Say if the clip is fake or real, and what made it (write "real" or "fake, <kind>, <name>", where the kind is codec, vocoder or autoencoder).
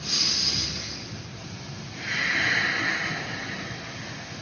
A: real